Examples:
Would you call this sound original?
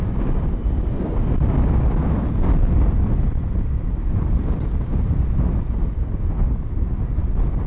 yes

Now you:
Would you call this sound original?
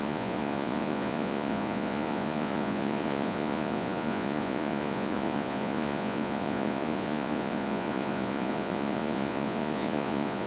no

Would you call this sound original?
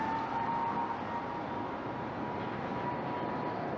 yes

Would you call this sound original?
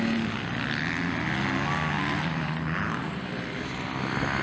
yes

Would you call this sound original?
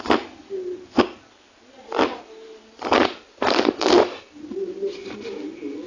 yes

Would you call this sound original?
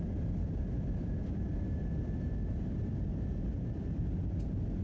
yes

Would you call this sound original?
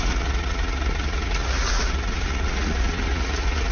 no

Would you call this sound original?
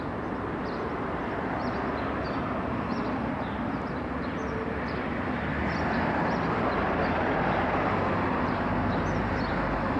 yes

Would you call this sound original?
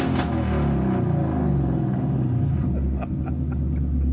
yes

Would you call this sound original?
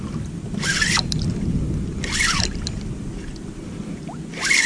yes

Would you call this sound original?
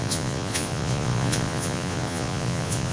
no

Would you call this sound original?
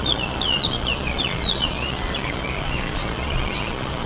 no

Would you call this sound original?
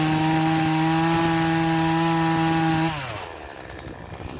yes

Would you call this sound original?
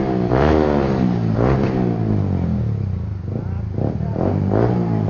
yes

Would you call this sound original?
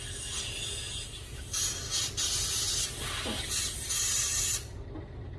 yes